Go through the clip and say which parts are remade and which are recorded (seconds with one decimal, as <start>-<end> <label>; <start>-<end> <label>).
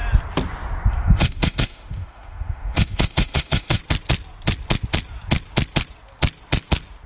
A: 0.0-0.9 recorded; 0.9-3.8 remade; 3.8-7.1 recorded